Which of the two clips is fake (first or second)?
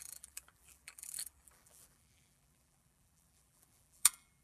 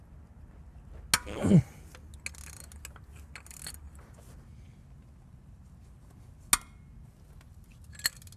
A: first